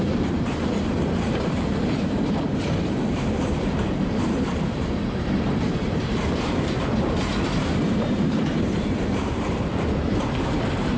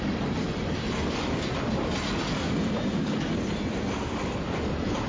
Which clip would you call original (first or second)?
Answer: second